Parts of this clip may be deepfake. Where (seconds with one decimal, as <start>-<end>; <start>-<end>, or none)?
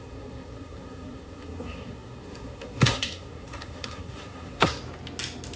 0.0-4.8